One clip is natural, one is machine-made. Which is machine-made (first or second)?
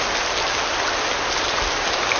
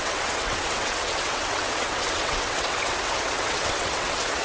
second